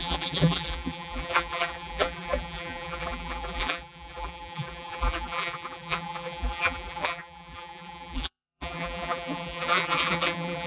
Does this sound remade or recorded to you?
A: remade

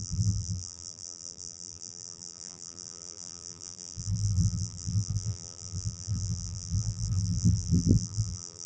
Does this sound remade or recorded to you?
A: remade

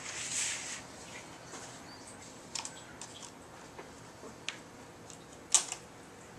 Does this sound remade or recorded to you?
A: recorded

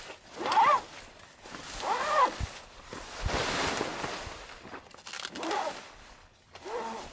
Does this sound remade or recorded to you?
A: recorded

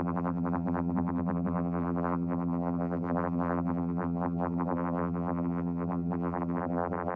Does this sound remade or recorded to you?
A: remade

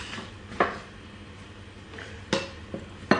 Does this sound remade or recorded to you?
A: recorded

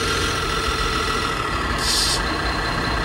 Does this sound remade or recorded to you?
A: recorded